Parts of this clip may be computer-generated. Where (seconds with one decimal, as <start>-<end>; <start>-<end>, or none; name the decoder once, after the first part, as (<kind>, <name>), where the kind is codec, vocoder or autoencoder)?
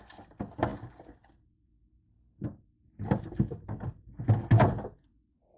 none